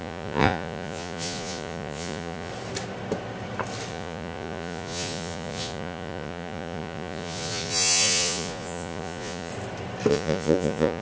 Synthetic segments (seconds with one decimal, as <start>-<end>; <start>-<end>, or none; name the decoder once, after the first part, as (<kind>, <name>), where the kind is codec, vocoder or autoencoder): 0.0-2.5 (vocoder, Vocos); 3.9-9.5; 10.1-11.0